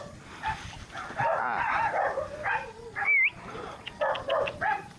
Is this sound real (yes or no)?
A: yes